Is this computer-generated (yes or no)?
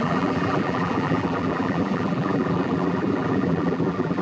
yes